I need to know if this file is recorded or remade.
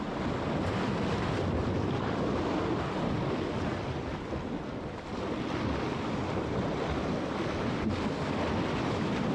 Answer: recorded